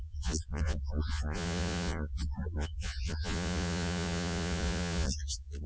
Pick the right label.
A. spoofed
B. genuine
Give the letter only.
A